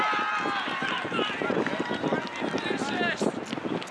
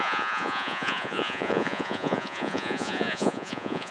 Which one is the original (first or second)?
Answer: first